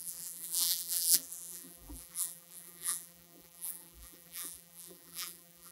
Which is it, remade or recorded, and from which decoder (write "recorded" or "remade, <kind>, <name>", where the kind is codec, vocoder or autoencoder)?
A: remade, vocoder, BigVGAN v2